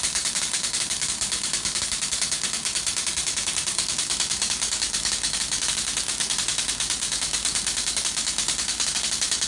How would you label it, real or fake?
fake